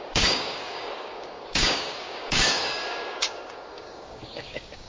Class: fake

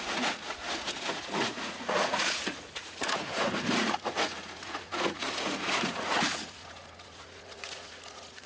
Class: fake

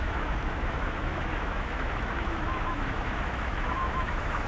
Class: fake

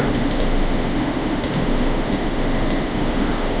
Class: fake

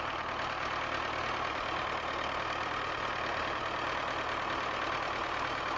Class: real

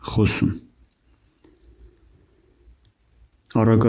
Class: real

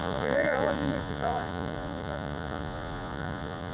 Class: fake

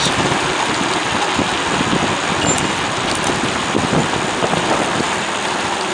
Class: real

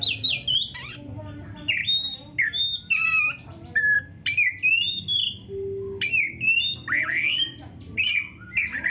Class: real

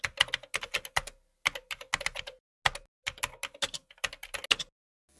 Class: real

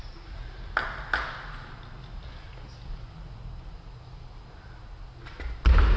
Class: real